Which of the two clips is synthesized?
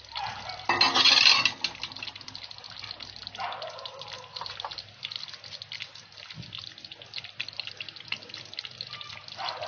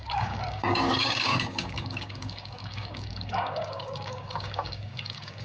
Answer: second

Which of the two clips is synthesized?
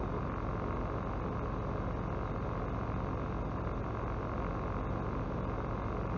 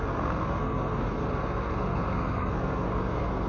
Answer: second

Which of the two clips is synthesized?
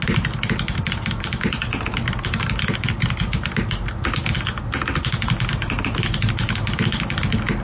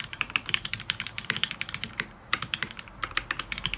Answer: second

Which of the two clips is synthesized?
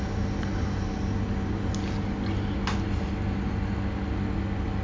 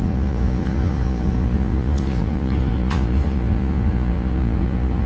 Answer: second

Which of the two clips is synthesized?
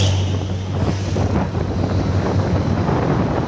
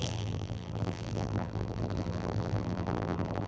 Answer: second